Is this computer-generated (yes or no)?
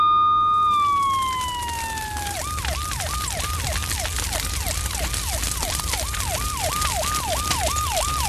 no